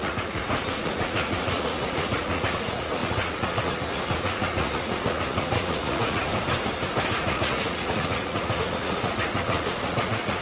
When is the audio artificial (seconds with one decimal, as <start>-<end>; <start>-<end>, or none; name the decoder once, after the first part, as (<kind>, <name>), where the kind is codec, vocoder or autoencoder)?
0.0-6.3 (vocoder, Vocos); 7.2-10.4